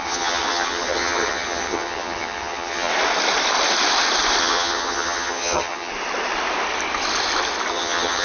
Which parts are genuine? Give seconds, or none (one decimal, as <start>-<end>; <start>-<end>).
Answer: 2.9-4.4; 5.9-7.7